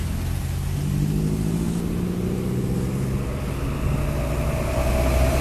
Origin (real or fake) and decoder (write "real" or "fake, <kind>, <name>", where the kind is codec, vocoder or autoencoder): real